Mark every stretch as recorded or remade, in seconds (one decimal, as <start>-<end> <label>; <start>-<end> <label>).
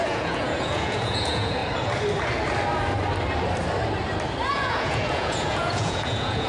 0.0-1.6 remade; 1.6-4.5 recorded; 4.5-6.5 remade